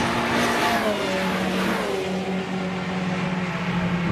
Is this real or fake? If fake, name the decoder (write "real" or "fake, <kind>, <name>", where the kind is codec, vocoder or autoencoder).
real